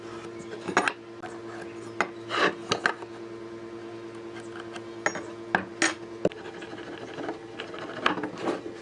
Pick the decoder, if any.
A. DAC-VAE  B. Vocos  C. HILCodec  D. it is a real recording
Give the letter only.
D